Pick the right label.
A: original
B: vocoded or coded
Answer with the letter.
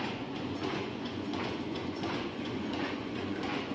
B